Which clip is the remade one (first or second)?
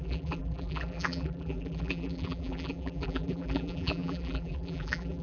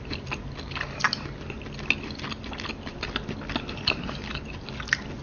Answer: first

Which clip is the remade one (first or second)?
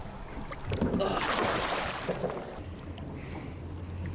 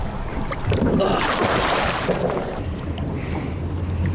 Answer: second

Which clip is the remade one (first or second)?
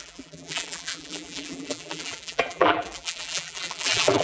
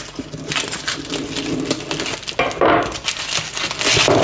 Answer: first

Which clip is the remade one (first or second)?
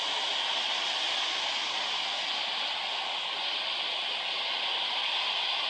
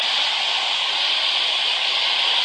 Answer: second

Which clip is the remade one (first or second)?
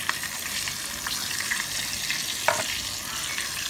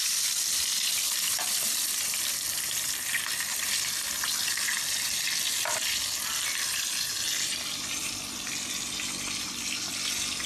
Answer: second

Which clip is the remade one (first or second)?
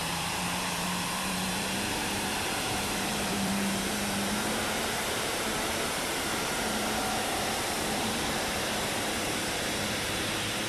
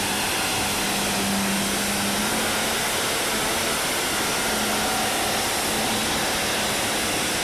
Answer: first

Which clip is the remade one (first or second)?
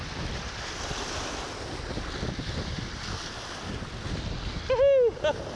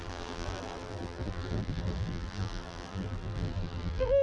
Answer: second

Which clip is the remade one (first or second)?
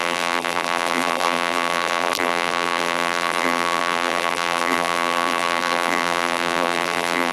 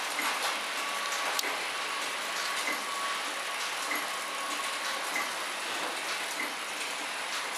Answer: first